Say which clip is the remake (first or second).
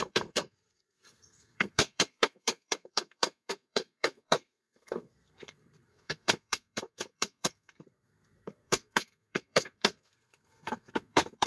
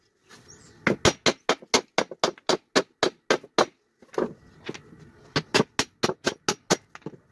first